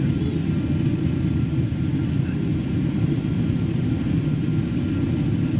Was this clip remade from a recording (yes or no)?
yes